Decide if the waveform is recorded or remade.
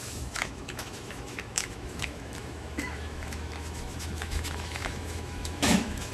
remade